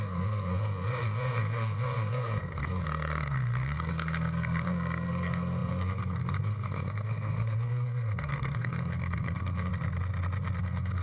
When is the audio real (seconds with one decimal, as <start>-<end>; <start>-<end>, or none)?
9.7-10.6